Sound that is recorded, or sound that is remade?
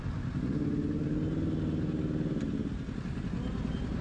recorded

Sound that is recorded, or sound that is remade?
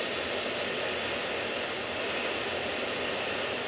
recorded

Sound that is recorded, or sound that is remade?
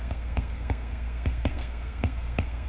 remade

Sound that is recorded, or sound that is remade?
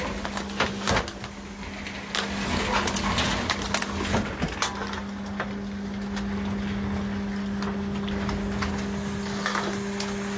recorded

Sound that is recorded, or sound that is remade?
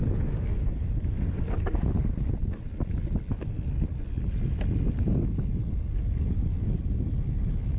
recorded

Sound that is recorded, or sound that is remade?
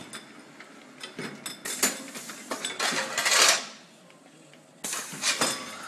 recorded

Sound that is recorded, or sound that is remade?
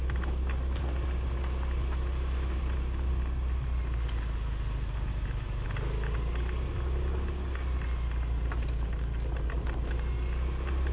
recorded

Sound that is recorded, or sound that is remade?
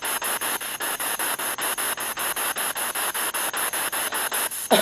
recorded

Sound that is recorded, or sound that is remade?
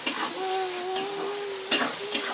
recorded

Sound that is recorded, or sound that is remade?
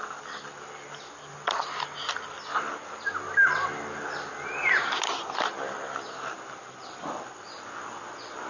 recorded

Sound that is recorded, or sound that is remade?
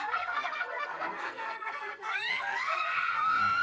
remade